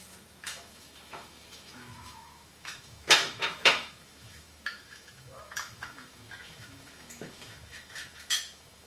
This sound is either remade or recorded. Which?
remade